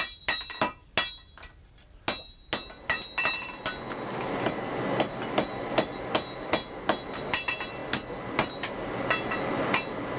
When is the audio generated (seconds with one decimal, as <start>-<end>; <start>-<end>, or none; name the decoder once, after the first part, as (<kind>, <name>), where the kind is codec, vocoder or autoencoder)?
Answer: none